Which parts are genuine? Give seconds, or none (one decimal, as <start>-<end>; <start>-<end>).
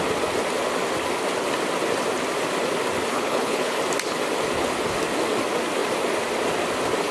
0.0-3.1; 3.8-7.1